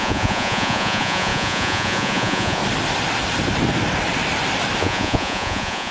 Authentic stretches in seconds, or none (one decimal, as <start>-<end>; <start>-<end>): 2.6-4.8